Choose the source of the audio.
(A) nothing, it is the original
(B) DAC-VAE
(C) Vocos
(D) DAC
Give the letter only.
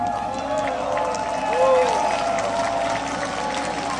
A